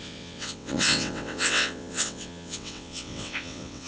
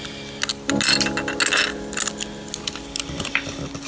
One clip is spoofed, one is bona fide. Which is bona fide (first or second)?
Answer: second